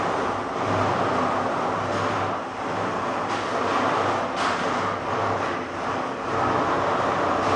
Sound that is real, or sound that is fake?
real